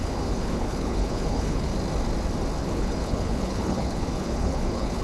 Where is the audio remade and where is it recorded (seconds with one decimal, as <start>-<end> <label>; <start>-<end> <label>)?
0.0-1.7 remade; 1.7-2.6 recorded; 2.6-5.0 remade